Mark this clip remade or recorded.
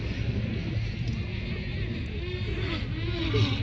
recorded